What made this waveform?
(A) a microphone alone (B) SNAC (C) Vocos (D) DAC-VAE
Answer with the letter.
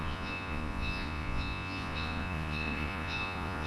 C